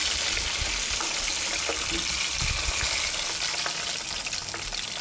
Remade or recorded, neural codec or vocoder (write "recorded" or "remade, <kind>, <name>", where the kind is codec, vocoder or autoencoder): recorded